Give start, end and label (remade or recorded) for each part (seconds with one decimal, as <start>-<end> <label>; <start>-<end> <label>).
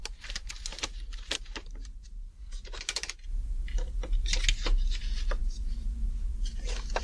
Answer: 0.0-3.1 remade; 3.1-5.4 recorded; 5.4-7.0 remade